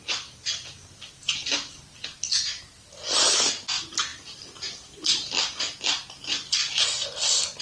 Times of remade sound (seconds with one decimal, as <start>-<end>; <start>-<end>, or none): none